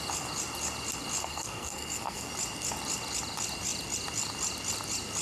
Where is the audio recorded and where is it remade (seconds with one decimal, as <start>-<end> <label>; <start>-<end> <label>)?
0.0-1.2 recorded; 1.2-2.3 remade; 2.3-5.2 recorded